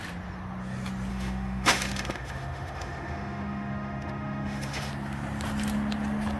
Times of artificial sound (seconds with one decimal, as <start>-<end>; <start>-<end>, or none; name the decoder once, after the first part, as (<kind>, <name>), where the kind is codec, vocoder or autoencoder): 1.1-4.9 (autoencoder, DAC-VAE)